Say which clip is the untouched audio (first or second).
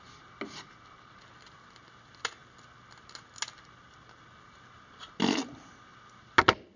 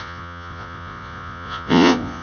first